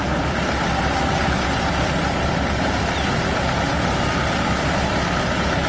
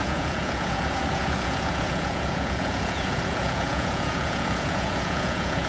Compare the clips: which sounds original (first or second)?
first